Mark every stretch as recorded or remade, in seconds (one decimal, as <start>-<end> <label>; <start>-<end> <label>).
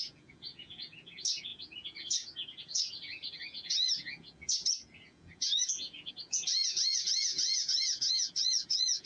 0.0-9.1 remade